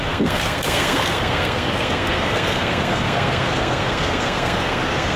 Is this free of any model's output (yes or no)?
no